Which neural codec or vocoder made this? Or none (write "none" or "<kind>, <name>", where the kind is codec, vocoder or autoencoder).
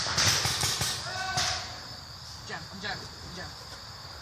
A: none